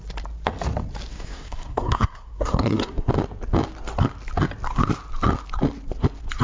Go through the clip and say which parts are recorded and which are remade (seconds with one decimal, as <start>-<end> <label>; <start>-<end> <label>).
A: 0.0-1.1 recorded; 1.1-3.1 remade; 3.1-6.4 recorded